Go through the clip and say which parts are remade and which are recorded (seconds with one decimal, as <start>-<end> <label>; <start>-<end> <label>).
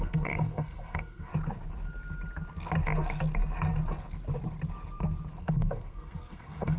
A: 0.0-1.3 remade; 1.3-5.4 recorded; 5.4-6.8 remade